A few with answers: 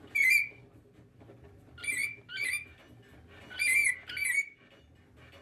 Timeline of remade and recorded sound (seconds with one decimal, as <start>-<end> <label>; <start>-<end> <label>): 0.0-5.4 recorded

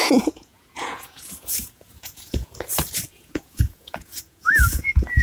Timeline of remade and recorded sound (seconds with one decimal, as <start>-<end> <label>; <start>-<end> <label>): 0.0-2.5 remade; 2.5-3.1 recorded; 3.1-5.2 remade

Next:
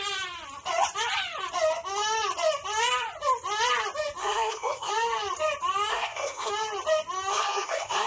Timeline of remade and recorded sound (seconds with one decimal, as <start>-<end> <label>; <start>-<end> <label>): 0.0-4.2 recorded; 4.2-4.9 remade; 4.9-5.9 recorded; 5.9-6.5 remade; 6.5-7.3 recorded; 7.3-8.1 remade

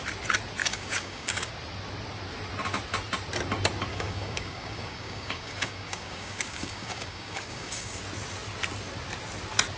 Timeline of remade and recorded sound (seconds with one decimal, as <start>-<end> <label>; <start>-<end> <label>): 0.0-0.6 recorded; 0.6-1.5 remade; 1.5-3.9 recorded; 3.9-8.0 remade; 8.0-9.8 recorded